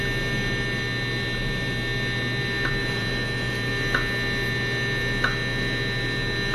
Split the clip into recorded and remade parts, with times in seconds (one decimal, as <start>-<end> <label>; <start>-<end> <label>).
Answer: 0.0-2.8 recorded; 2.8-3.7 remade; 3.7-6.5 recorded